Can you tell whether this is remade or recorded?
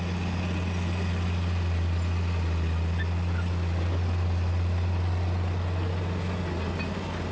recorded